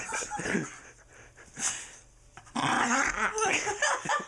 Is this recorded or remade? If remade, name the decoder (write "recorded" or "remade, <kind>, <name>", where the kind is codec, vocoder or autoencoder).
recorded